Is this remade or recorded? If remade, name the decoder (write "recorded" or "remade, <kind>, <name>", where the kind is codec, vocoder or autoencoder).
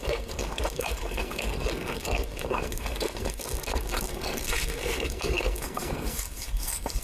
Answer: remade, codec, SNAC